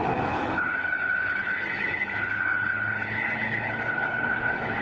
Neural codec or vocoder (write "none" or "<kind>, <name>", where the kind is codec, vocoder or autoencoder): codec, HILCodec